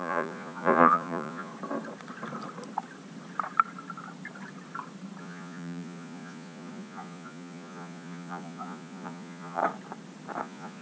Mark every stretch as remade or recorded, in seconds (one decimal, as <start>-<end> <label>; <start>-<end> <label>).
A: 0.0-1.5 remade; 1.5-5.2 recorded; 5.2-9.6 remade; 9.6-10.4 recorded; 10.4-10.8 remade